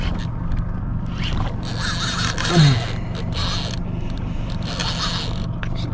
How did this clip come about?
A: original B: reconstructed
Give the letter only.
A